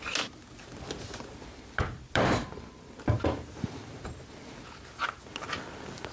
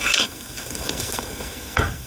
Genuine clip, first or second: first